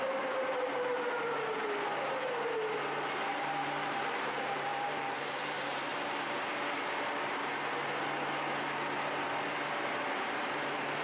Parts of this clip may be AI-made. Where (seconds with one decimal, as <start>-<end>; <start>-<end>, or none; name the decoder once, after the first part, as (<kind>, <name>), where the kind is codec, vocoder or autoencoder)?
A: 0.0-0.9 (vocoder, BigVGAN v2); 3.3-5.9; 9.7-11.0

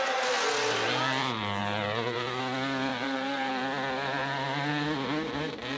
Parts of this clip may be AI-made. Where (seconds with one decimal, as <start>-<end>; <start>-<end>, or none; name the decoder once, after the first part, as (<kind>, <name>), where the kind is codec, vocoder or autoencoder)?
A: 1.6-2.4 (vocoder, BigVGAN v2); 2.9-3.5